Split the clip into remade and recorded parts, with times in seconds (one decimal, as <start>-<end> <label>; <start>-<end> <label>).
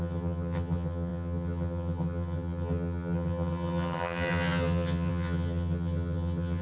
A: 0.0-6.6 remade